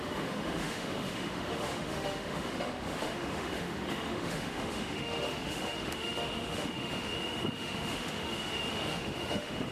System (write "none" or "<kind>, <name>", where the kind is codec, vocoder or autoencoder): autoencoder, DAC-VAE